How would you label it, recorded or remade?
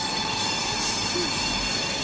recorded